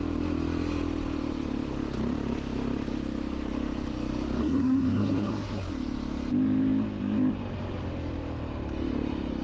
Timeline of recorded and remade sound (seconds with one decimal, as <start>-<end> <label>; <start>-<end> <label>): 0.0-4.4 recorded; 4.4-5.6 remade; 5.6-9.4 recorded